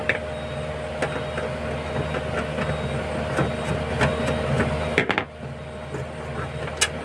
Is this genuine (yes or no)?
yes